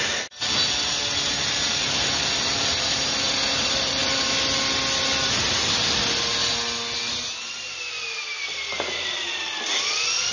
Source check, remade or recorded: recorded